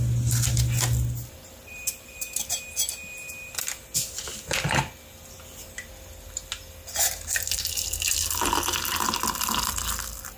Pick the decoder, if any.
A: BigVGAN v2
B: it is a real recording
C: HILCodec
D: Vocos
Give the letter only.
B